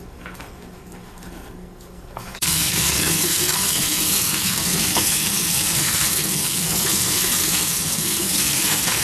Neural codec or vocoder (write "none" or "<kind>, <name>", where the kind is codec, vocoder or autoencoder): codec, SNAC